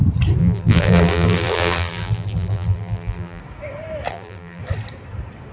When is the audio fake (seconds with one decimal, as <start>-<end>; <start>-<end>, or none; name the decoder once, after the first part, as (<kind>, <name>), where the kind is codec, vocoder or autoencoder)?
0.4-3.4 (vocoder, BigVGAN v2); 4.1-4.6